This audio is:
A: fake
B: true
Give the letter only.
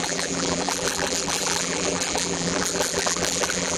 A